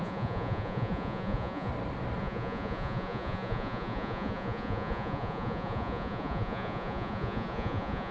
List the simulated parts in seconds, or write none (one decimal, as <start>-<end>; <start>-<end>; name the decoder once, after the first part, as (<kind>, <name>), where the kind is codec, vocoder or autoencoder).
0.0-1.7 (vocoder, Vocos); 2.2-8.1